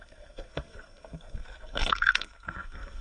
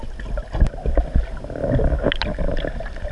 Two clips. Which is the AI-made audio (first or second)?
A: first